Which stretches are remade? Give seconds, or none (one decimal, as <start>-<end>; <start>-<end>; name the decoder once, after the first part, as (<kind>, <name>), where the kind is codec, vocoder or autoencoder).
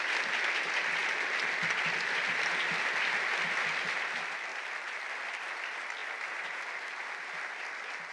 1.0-2.6 (vocoder, BigVGAN v2); 4.5-5.1